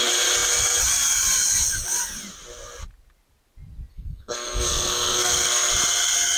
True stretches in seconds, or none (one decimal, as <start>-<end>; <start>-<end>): 0.0-3.9; 5.7-6.4